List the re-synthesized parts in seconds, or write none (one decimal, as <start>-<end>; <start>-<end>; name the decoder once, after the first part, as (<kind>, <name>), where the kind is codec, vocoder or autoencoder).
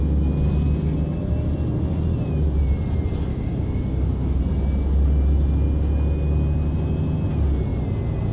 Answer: 3.3-4.4 (codec, DAC)